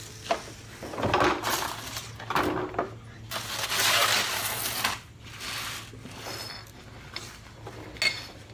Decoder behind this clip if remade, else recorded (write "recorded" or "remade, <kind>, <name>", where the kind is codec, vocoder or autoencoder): recorded